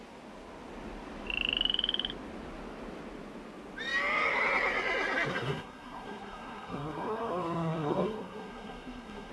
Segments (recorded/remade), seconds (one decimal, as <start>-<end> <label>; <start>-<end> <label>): 0.0-5.3 recorded; 5.3-9.3 remade